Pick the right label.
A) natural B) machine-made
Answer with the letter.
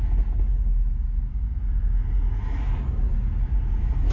A